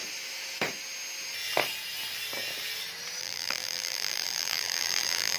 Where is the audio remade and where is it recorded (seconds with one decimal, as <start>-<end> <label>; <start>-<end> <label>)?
0.0-3.2 recorded; 3.2-5.4 remade